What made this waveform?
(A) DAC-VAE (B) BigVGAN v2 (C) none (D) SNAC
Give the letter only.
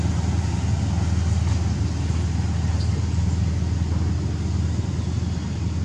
C